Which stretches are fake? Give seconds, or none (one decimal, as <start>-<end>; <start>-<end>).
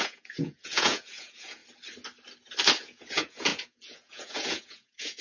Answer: 0.0-1.6; 2.8-5.2